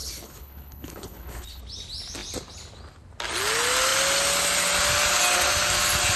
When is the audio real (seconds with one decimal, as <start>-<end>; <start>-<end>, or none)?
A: 1.6-6.2